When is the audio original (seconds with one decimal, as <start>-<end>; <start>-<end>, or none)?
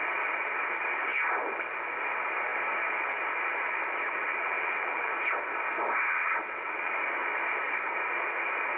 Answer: 0.0-4.3; 5.1-6.1; 6.9-8.8